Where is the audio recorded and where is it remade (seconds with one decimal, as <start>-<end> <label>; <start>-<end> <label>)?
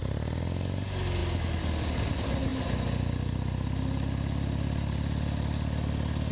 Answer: 0.0-6.3 recorded